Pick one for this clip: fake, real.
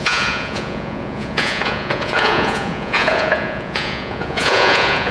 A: fake